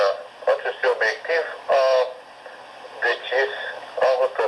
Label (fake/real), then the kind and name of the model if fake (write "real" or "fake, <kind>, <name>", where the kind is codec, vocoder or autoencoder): real